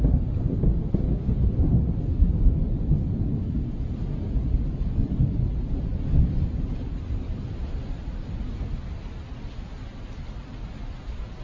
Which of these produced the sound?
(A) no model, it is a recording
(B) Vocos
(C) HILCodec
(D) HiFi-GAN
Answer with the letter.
A